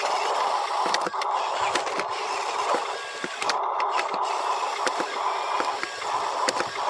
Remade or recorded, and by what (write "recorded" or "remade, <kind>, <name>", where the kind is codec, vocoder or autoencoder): recorded